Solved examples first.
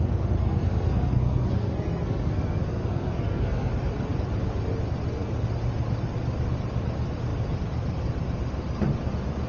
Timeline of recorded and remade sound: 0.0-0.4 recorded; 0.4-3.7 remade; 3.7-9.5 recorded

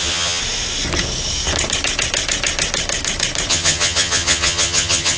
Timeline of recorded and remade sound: 0.0-0.4 remade; 0.4-3.5 recorded; 3.5-5.2 remade